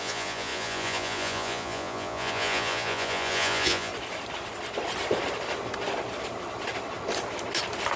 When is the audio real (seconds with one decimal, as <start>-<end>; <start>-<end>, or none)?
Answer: 3.9-8.0